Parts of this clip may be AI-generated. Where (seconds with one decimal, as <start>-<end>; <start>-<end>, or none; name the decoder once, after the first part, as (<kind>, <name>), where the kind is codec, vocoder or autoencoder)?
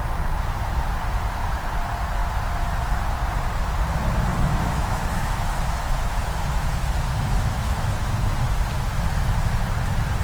4.3-8.3 (autoencoder, DAC-VAE)